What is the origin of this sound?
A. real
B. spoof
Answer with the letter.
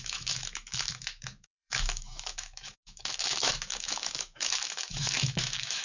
B